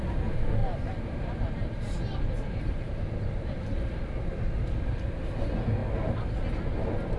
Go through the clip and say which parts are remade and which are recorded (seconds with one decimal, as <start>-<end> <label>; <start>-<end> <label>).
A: 0.0-0.6 recorded; 0.6-3.8 remade; 3.8-7.2 recorded